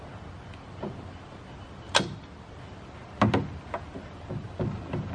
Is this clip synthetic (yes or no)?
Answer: no